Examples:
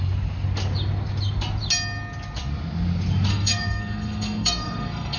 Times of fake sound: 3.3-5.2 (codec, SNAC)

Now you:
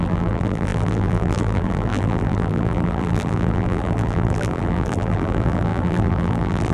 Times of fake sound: 0.0-6.7 (vocoder, BigVGAN v2)

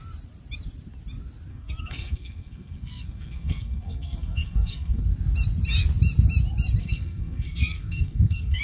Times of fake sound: 1.5-5.0 (codec, SNAC); 6.8-8.6

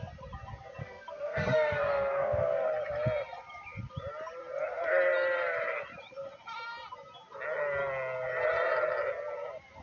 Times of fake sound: 0.8-2.7 (codec, SNAC)

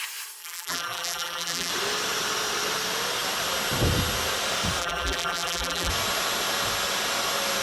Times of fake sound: 0.4-1.7 (vocoder, BigVGAN v2); 4.8-5.9

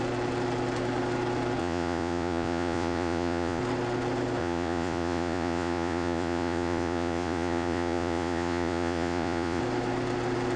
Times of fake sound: 1.6-3.6 (vocoder, Vocos); 4.4-9.6

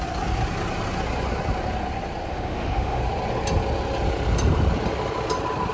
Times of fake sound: 2.3-3.0 (autoencoder, DAC-VAE)